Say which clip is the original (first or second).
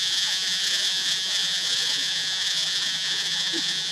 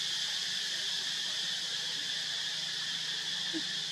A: second